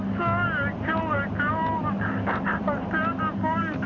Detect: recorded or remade recorded